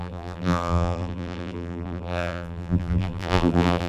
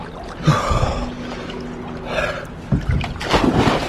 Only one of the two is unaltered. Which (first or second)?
second